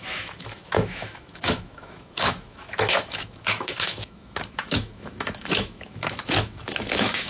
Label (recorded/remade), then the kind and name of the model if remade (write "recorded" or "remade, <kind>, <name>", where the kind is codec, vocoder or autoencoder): remade, autoencoder, DAC-VAE